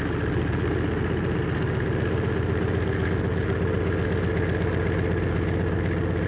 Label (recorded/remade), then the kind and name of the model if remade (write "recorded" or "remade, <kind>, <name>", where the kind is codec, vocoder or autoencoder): recorded